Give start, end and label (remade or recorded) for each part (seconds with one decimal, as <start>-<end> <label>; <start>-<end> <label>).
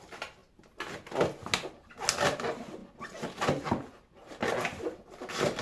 0.0-5.6 recorded